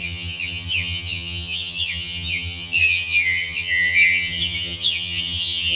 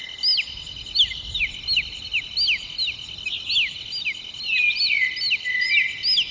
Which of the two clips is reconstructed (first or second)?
first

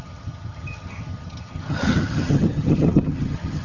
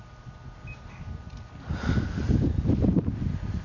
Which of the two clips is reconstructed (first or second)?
first